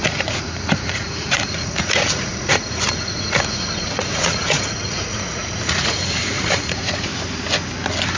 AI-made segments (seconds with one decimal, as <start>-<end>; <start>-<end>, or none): 0.0-7.1